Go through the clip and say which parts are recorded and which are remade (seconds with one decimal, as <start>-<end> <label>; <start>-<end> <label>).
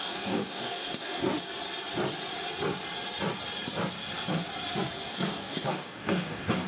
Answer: 0.0-1.2 remade; 1.2-5.1 recorded; 5.1-6.7 remade